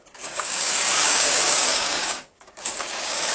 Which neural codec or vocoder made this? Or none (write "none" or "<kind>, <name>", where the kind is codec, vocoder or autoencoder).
codec, DAC